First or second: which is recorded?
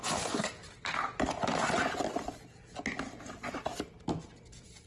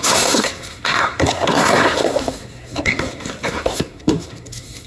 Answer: first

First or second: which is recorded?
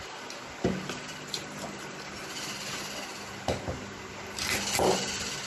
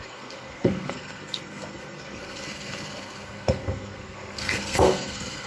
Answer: first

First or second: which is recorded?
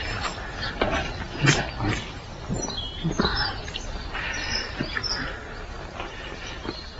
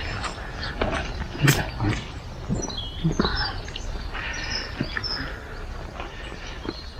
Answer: second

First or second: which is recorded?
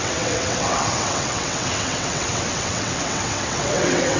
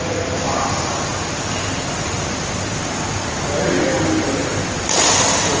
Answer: second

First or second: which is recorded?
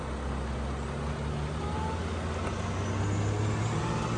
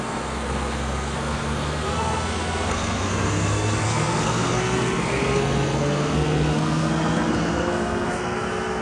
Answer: first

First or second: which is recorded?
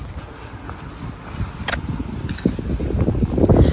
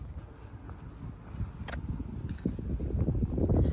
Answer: second